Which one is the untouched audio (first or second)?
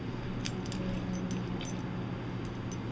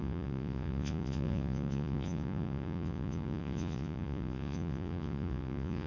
first